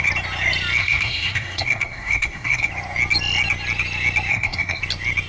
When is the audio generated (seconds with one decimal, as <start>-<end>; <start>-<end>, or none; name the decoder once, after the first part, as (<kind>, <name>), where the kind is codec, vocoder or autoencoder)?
0.8-2.7 (codec, SNAC); 4.3-4.8

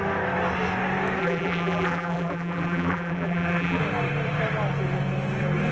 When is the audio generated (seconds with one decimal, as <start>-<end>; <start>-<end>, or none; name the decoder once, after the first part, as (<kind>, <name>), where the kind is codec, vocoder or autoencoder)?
1.2-3.8 (vocoder, BigVGAN v2)

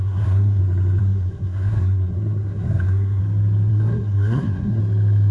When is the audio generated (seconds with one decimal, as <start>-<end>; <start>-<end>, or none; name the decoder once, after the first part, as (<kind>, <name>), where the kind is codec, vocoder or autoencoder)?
0.0-0.6 (codec, SNAC); 1.0-3.2; 3.7-4.8

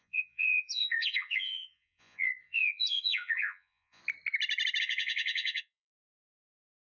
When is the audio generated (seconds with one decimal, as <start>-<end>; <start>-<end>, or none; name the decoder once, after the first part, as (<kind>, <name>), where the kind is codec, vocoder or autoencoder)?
0.0-4.0 (vocoder, Vocos); 4.8-6.8

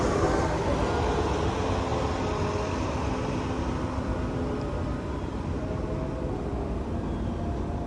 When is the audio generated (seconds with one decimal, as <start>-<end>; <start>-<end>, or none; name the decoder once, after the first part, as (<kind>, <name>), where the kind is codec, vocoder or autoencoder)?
none

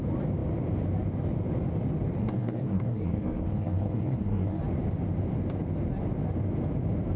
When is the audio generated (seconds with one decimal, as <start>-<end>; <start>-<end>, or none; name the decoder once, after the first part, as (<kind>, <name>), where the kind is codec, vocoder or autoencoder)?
2.2-4.6 (codec, SNAC)